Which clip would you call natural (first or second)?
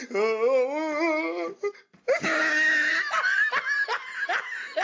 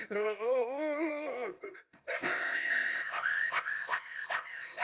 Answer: first